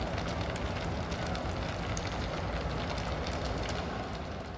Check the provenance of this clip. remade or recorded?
recorded